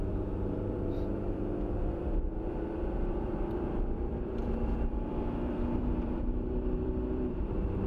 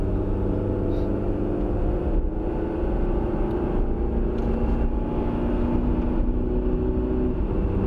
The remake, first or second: first